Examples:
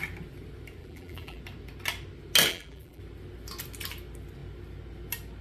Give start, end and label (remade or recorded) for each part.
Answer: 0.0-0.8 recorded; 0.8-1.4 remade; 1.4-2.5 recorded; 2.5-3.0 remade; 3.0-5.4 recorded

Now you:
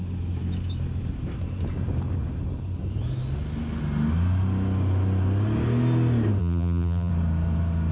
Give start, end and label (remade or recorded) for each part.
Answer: 0.0-6.4 recorded; 6.4-7.1 remade; 7.1-7.9 recorded

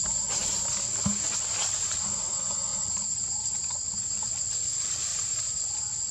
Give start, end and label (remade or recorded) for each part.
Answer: 0.0-1.6 recorded; 1.6-2.3 remade; 2.3-2.7 recorded; 2.7-3.2 remade; 3.2-5.1 recorded; 5.1-5.6 remade; 5.6-6.1 recorded

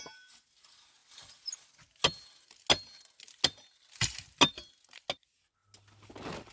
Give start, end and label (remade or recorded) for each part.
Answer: 0.0-6.5 recorded

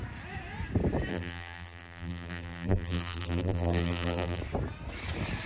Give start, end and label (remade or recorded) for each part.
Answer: 0.0-1.1 recorded; 1.1-4.4 remade; 4.4-5.5 recorded

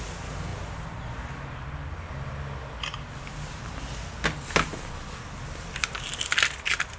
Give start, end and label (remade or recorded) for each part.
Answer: 0.0-7.0 recorded

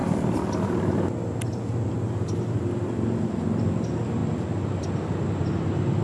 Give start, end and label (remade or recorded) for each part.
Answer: 0.0-6.0 recorded

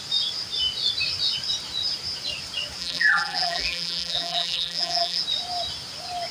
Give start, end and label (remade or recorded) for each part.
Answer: 0.0-2.8 recorded; 2.8-5.2 remade; 5.2-6.3 recorded